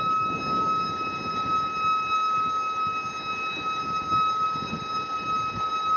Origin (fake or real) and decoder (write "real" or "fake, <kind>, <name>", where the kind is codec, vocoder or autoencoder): real